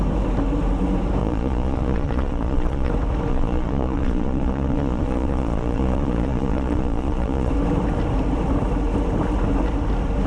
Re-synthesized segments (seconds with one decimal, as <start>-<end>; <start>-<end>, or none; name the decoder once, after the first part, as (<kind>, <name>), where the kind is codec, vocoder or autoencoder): 1.2-2.9 (vocoder, Vocos); 3.3-7.5